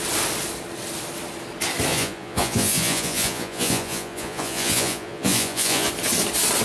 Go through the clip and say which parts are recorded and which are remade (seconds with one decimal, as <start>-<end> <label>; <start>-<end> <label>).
0.0-1.9 recorded; 1.9-5.9 remade; 5.9-6.6 recorded